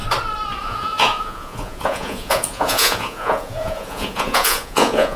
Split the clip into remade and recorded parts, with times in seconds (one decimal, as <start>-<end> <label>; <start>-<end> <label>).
0.0-0.6 recorded; 0.6-5.2 remade